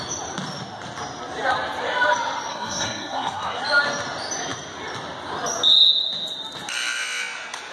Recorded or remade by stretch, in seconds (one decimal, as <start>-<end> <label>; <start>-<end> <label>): 0.0-2.5 recorded; 2.5-3.6 remade; 3.6-7.7 recorded